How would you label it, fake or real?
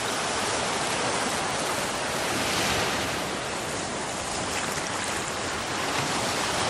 real